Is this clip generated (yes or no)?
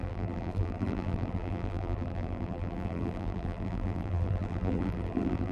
yes